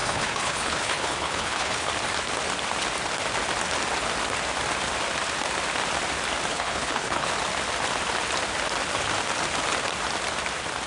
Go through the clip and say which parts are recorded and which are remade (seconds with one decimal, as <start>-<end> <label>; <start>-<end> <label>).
0.0-1.9 remade; 1.9-6.5 recorded; 6.5-7.3 remade; 7.3-10.9 recorded